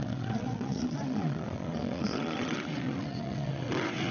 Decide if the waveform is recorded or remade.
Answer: remade